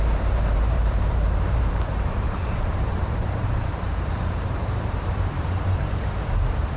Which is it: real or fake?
fake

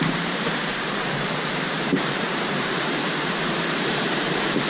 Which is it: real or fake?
fake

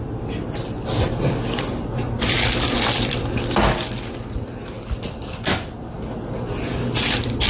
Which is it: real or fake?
real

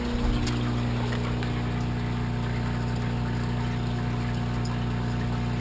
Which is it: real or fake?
real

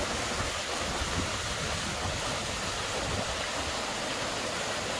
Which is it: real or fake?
real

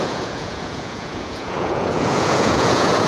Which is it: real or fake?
fake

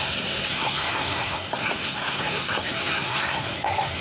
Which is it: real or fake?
fake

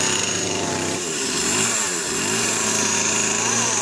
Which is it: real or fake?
fake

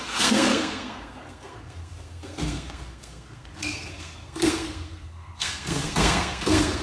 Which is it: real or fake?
fake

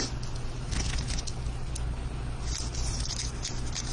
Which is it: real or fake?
real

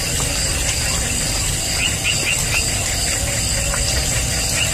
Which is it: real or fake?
real